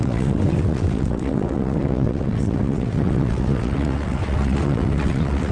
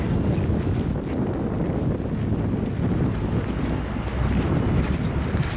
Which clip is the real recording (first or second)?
second